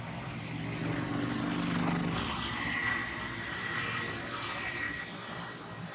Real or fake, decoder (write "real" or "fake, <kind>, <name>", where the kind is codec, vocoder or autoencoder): real